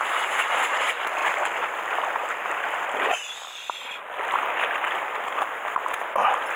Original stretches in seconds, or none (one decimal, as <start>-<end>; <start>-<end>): 0.0-6.6